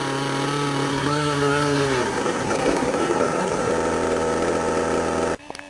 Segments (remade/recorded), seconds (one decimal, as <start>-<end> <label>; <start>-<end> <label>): 0.0-0.9 recorded; 0.9-3.7 remade; 3.7-5.7 recorded